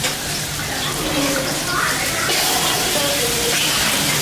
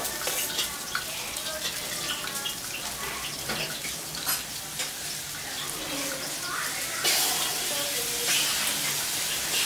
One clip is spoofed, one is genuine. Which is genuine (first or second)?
second